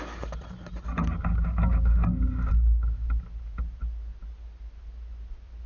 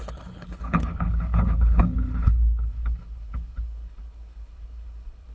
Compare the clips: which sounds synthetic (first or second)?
second